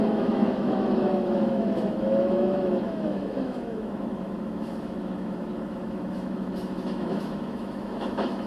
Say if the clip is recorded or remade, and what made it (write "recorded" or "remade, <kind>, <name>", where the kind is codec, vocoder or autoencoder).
remade, autoencoder, DAC-VAE